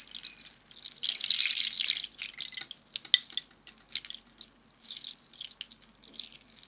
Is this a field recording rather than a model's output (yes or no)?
yes